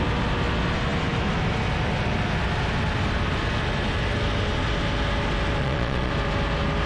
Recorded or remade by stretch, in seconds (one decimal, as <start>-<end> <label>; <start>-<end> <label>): 0.0-5.6 recorded; 5.6-6.1 remade; 6.1-6.9 recorded

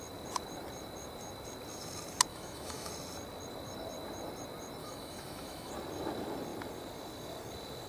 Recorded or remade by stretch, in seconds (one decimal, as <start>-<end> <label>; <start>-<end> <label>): 0.0-2.3 recorded; 2.3-2.9 remade; 2.9-4.8 recorded; 4.8-5.7 remade; 5.7-7.9 recorded

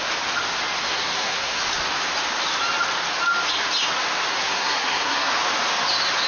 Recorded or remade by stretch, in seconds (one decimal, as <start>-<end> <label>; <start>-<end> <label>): 0.0-0.9 recorded; 0.9-1.6 remade; 1.6-4.3 recorded; 4.3-5.3 remade; 5.3-6.3 recorded

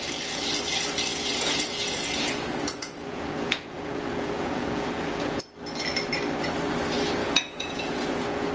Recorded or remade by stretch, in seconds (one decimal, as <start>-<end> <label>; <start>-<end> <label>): 0.0-1.1 recorded; 1.1-5.4 remade; 5.4-7.2 recorded; 7.2-8.5 remade

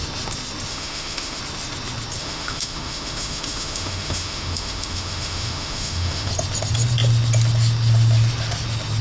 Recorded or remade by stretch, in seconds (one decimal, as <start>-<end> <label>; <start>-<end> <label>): 0.0-0.7 recorded; 0.7-1.4 remade; 1.4-2.2 recorded; 2.2-6.3 remade; 6.3-9.0 recorded